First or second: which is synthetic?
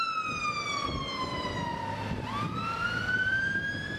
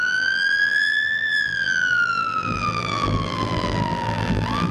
second